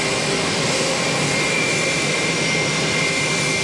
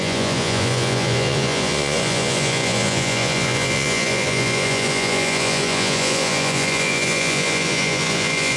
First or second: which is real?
first